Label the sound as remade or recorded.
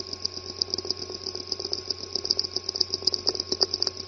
recorded